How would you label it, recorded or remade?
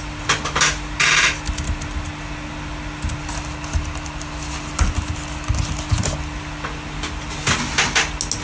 recorded